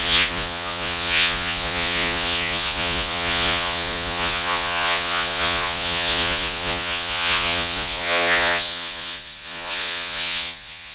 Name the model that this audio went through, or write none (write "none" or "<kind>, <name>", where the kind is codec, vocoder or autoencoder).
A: vocoder, Vocos